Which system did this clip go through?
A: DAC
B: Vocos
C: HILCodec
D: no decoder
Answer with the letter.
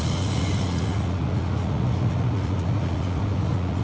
B